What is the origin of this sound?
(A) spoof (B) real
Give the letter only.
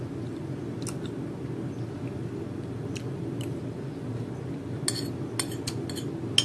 B